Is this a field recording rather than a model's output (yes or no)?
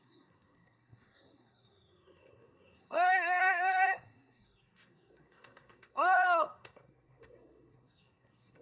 no